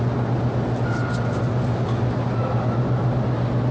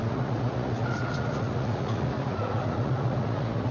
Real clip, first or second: first